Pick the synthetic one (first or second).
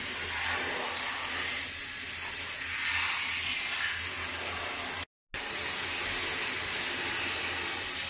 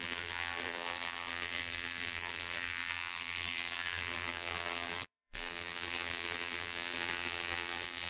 second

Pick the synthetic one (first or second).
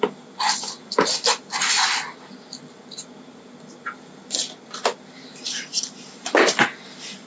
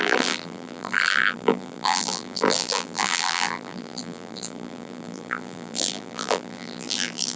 second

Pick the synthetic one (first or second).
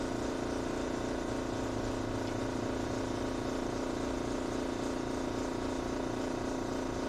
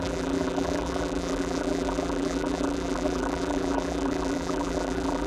second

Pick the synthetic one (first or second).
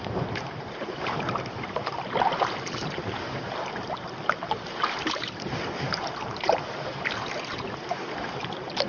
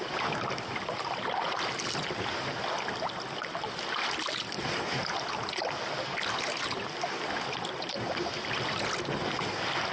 first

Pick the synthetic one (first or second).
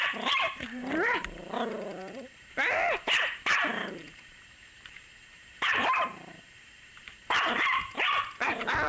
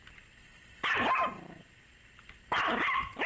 first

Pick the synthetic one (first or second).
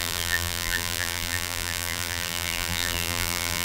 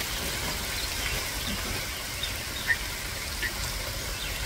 first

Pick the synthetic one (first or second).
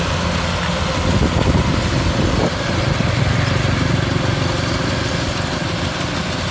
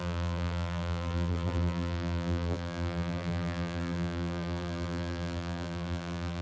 second